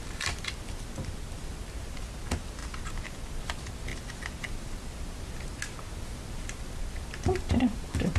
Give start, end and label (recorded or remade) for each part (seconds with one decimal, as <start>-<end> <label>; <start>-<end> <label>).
0.0-8.2 recorded